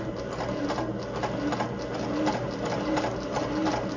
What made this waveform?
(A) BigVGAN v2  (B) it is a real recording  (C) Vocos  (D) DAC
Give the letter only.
B